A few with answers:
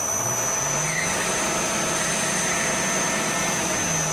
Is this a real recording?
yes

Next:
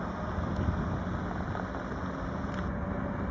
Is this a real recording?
yes